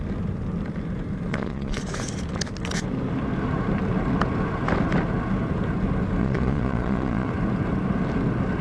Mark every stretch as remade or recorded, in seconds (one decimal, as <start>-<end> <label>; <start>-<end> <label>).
0.0-1.3 recorded; 1.3-1.8 remade; 1.8-6.2 recorded; 6.2-7.3 remade; 7.3-8.6 recorded